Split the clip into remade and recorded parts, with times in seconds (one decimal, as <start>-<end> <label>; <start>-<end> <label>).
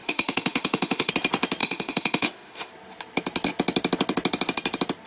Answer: 0.0-1.1 remade; 1.1-1.6 recorded; 1.6-2.7 remade; 2.7-5.1 recorded